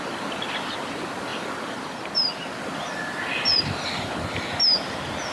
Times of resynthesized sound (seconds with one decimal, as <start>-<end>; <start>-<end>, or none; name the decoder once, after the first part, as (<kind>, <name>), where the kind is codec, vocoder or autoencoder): 1.3-3.0 (vocoder, BigVGAN v2)